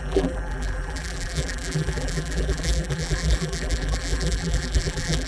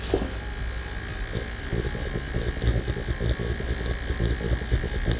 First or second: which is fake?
first